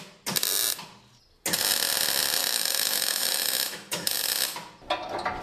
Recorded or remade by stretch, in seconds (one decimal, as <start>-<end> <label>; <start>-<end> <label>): 0.0-2.4 recorded; 2.4-4.1 remade; 4.1-5.4 recorded